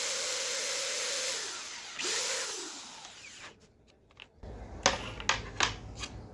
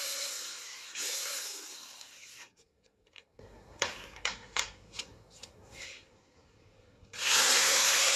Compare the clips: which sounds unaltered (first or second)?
first